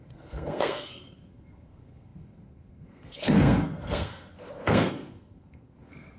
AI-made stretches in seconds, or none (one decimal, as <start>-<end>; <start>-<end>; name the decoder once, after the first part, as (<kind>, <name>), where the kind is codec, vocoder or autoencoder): 0.0-6.2 (codec, SNAC)

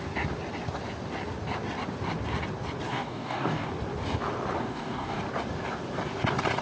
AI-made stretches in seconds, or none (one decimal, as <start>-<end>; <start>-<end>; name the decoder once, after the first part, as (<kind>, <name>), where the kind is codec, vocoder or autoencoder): 2.9-3.7 (codec, DAC); 4.6-5.2